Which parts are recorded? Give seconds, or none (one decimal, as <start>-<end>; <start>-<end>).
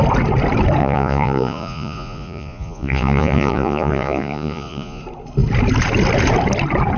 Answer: 0.0-0.8; 5.0-7.0